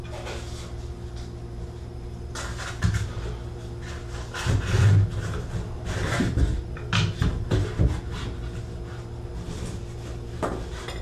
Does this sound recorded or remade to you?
recorded